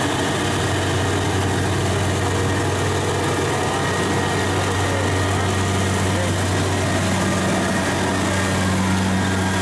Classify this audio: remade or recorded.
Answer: recorded